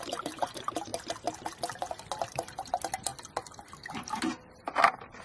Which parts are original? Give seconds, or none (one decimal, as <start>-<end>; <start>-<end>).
0.9-2.3; 3.1-3.9